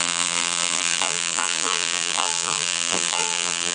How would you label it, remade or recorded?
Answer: remade